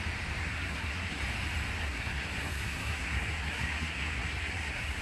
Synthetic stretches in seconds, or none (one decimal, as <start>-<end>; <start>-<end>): 0.4-1.2; 1.8-5.0